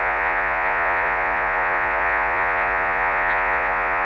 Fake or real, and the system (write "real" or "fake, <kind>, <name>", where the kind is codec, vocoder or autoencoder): fake, vocoder, Vocos